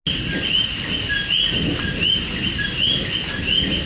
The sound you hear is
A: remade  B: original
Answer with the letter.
B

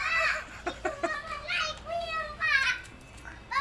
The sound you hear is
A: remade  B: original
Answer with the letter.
B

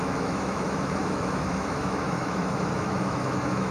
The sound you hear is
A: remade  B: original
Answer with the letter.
A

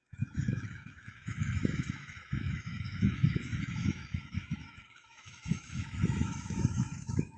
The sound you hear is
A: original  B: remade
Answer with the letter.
B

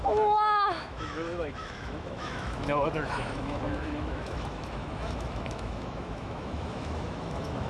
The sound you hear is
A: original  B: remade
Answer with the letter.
B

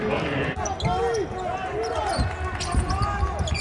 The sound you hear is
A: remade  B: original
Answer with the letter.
B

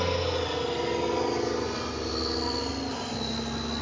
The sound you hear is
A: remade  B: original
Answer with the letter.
B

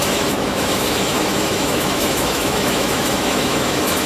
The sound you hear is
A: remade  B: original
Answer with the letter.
A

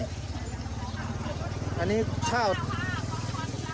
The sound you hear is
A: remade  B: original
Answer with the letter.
B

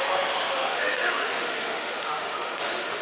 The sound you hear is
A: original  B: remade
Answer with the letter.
B